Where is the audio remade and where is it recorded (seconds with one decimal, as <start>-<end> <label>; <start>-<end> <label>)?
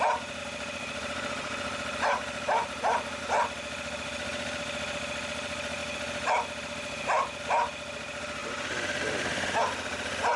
0.0-0.4 recorded; 0.4-3.2 remade; 3.2-8.4 recorded; 8.4-10.4 remade